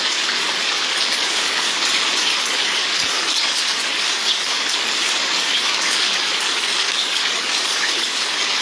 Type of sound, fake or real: fake